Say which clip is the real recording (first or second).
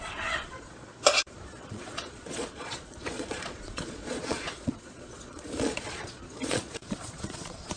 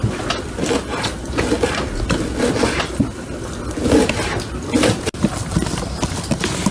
second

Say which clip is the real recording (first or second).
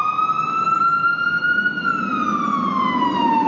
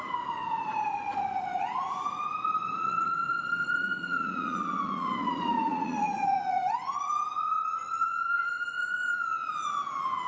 first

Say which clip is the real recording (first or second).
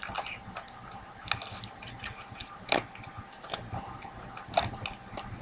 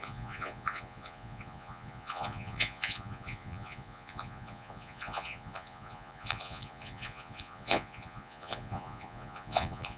first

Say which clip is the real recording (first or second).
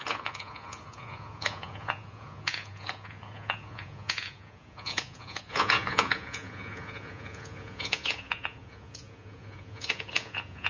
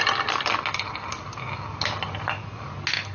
second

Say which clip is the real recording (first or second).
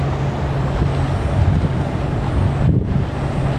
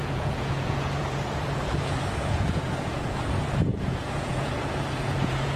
first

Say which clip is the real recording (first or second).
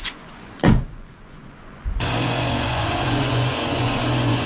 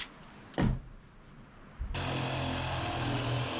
second